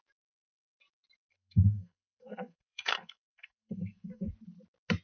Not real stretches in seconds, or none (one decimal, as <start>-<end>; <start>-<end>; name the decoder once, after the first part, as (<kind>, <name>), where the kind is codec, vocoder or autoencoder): 1.3-4.3 (codec, SNAC)